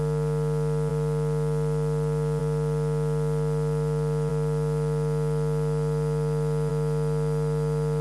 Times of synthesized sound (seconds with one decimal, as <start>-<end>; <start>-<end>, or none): none